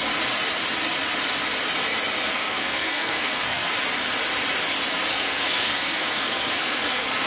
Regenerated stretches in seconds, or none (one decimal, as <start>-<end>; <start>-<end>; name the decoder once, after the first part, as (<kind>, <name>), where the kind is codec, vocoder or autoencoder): 2.3-3.7 (codec, SNAC); 5.1-7.3